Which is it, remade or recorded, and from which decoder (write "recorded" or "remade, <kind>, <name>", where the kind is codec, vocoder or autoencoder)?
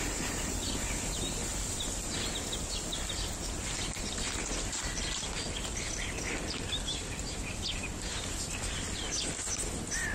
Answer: recorded